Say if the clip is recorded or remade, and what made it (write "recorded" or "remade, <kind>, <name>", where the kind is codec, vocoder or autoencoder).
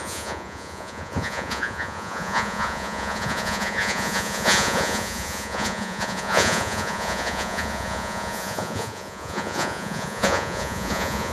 remade, vocoder, Vocos